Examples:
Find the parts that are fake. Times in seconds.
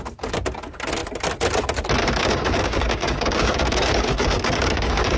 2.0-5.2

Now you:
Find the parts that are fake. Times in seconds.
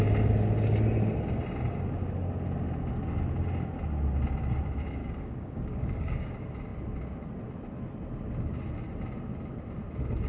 5.0-6.3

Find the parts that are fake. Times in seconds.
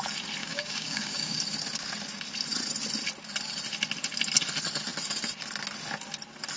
0.4-1.4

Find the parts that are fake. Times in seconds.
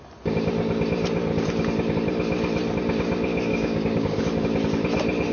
3.5-4.2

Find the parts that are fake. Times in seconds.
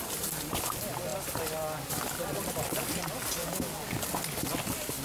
3.4-4.0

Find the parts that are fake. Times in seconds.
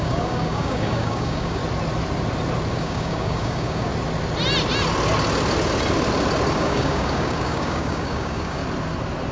0.0-1.6; 2.7-3.9; 6.6-8.6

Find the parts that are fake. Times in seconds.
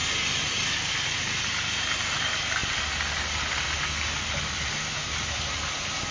none